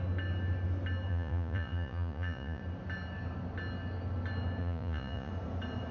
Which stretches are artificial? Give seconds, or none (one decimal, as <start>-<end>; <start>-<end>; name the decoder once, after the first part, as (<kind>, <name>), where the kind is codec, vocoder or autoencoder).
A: 1.1-2.6 (vocoder, Vocos); 4.6-5.3